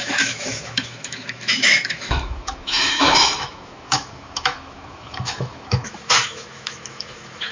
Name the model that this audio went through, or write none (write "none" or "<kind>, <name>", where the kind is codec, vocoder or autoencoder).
autoencoder, DAC-VAE